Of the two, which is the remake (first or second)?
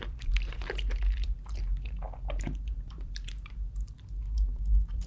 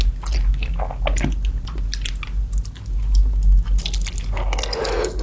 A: first